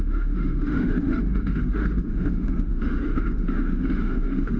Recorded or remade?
remade